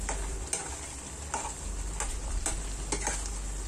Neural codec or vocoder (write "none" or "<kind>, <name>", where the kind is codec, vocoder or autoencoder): none